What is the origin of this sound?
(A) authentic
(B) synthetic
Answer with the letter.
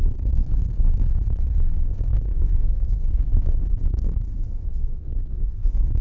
B